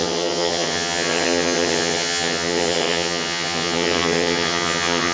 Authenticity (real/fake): fake